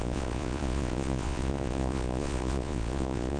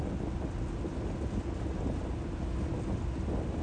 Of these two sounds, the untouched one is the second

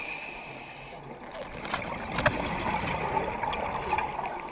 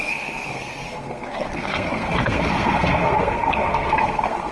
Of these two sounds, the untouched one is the first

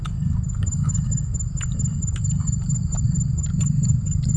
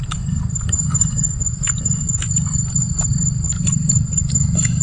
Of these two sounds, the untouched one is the first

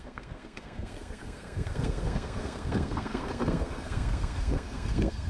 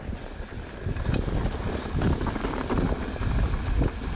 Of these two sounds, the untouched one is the second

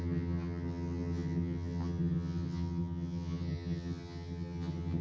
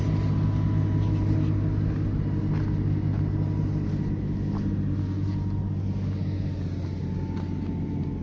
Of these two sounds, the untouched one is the second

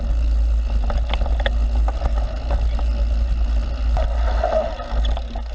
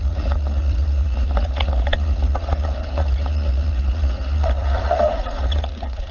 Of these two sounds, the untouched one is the first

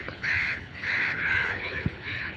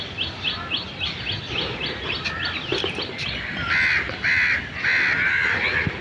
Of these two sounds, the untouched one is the second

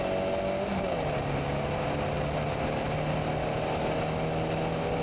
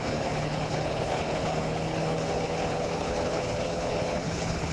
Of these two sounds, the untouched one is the first